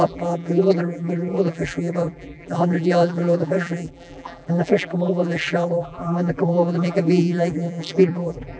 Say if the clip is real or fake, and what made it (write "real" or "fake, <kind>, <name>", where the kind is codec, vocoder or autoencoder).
fake, vocoder, BigVGAN v2